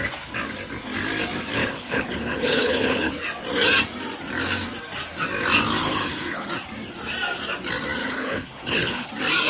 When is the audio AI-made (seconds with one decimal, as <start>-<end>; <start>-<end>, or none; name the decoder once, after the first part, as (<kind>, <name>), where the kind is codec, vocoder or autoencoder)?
1.6-3.1 (codec, HILCodec); 5.8-6.5; 8.0-9.1